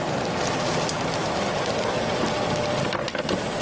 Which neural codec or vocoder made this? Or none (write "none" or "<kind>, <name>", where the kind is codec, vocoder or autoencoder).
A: none